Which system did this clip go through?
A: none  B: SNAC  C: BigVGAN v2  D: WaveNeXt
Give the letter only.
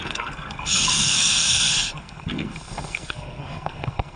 B